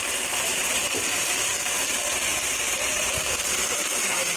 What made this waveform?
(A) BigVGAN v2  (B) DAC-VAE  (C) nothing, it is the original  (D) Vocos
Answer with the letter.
A